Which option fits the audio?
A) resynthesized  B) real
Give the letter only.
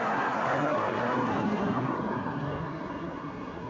A